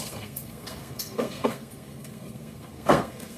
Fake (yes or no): yes